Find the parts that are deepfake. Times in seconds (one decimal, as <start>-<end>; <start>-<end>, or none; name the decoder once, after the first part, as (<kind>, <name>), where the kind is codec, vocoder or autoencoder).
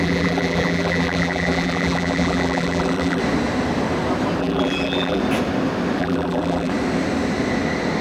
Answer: 0.0-3.2 (vocoder, BigVGAN v2); 4.4-5.2; 6.0-6.7